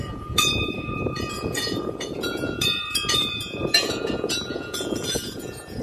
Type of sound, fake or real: fake